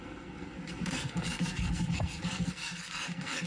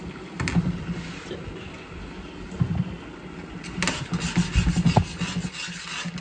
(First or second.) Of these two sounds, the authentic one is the second